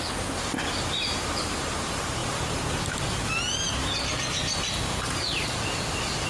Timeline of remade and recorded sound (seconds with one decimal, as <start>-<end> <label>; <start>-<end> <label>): 0.0-6.3 recorded